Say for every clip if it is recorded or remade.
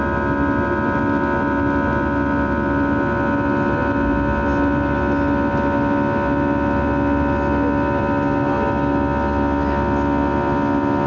recorded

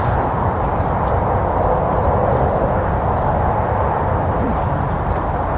recorded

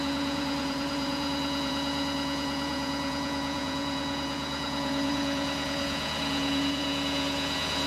remade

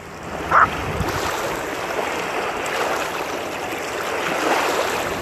recorded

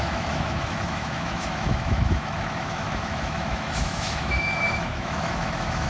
remade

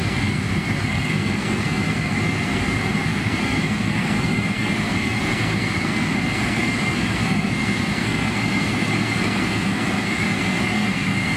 remade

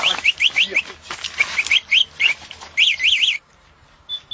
recorded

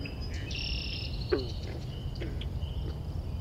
recorded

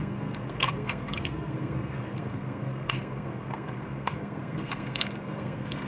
remade